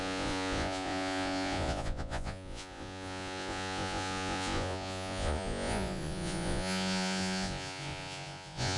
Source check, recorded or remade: remade